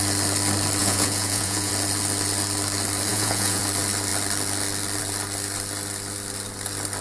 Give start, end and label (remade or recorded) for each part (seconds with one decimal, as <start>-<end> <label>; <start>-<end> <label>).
0.0-0.8 recorded; 0.8-1.7 remade; 1.7-3.1 recorded; 3.1-3.6 remade; 3.6-7.0 recorded